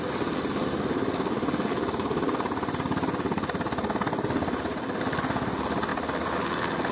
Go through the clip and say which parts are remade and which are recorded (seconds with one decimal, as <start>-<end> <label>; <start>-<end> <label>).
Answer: 0.0-6.9 recorded